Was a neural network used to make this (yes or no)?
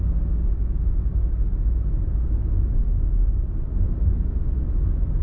no